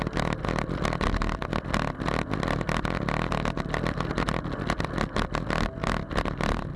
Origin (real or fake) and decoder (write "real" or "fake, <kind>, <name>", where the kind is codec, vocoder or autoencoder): real